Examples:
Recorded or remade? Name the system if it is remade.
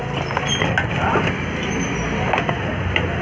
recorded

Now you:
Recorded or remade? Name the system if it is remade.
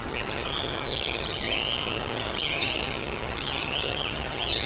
remade, vocoder, HiFi-GAN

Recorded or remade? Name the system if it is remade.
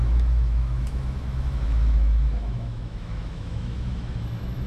remade, autoencoder, DAC-VAE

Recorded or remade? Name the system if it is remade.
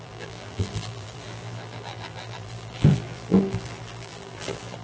remade, vocoder, BigVGAN v2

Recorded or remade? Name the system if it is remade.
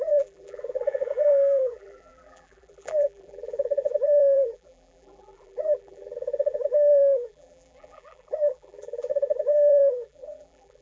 remade, vocoder, BigVGAN v2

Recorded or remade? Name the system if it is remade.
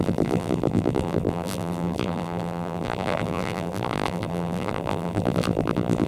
remade, vocoder, BigVGAN v2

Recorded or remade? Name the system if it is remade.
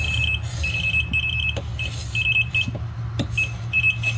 recorded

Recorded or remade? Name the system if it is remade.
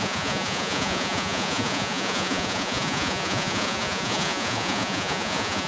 remade, vocoder, Vocos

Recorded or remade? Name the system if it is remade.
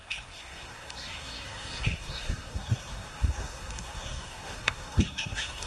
remade, codec, SNAC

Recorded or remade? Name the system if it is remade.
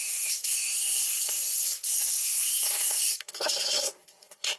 remade, codec, SNAC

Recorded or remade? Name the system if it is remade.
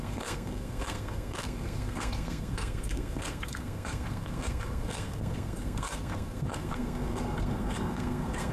remade, codec, SNAC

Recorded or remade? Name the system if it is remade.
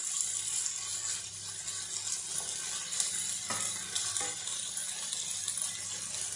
recorded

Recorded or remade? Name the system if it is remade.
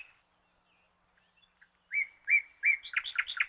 recorded